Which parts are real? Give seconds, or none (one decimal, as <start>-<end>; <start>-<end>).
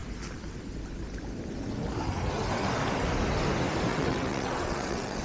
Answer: 0.0-3.9